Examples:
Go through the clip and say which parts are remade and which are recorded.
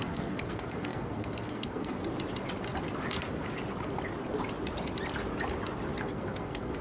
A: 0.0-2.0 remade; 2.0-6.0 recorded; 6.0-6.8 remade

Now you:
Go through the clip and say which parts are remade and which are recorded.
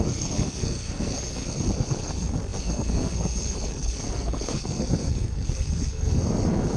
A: 0.0-6.8 remade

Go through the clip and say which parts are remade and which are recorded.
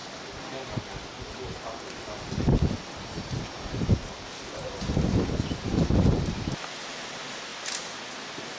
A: 0.0-8.6 recorded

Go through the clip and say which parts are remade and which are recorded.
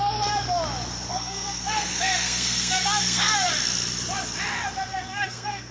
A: 0.0-1.1 recorded; 1.1-3.5 remade; 3.5-4.9 recorded; 4.9-5.7 remade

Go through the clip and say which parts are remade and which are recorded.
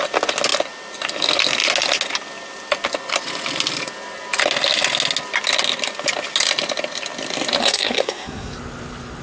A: 0.0-7.6 recorded; 7.6-8.5 remade; 8.5-9.2 recorded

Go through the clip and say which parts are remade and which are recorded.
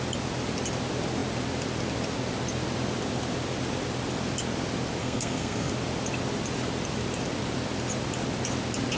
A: 0.0-5.0 recorded; 5.0-5.7 remade; 5.7-9.0 recorded